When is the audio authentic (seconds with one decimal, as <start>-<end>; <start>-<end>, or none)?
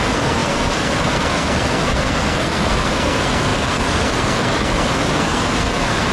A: none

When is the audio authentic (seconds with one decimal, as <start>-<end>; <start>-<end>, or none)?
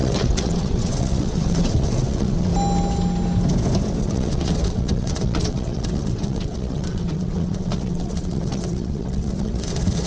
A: 2.5-4.0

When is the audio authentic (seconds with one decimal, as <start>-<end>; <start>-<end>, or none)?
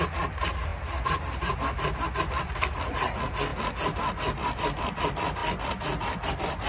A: 0.0-6.7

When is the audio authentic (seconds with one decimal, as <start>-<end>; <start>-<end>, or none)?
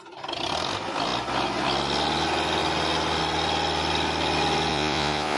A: 0.0-4.7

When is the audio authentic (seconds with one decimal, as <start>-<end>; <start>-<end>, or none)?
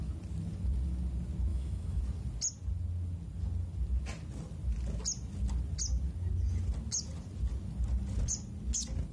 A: 0.0-1.5; 2.0-9.1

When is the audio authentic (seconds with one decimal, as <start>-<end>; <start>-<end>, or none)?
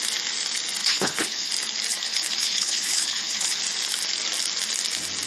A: 0.0-0.8; 1.5-1.9; 3.6-5.3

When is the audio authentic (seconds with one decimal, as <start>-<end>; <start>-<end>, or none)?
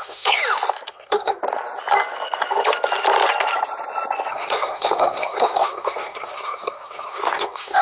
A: 0.4-0.9; 1.4-4.3